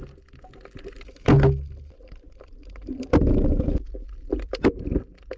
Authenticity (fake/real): real